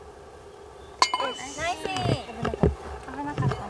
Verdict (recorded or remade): recorded